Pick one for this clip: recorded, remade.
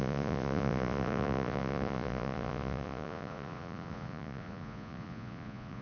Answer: remade